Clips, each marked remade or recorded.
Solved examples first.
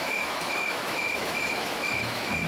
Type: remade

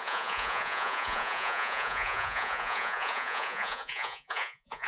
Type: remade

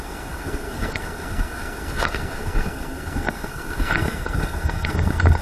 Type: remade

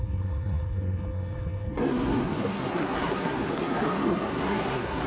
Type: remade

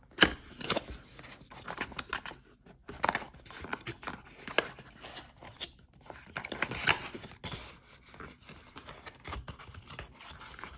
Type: recorded